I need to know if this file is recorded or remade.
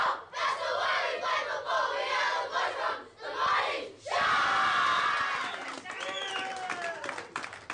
recorded